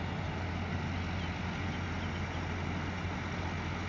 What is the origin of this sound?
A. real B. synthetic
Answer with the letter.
A